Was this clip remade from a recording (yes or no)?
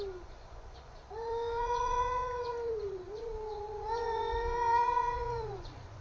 yes